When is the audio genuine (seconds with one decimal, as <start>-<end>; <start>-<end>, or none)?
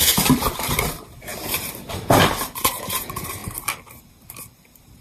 3.4-4.5